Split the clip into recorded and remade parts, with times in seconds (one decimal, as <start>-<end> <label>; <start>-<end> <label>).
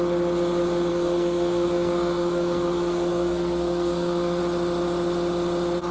0.0-0.9 recorded; 0.9-4.4 remade; 4.4-5.9 recorded